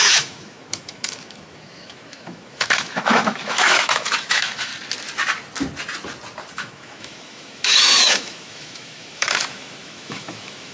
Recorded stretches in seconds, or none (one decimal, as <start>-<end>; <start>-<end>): 4.7-6.5